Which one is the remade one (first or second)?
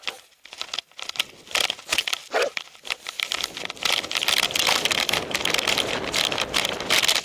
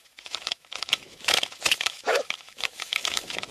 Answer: second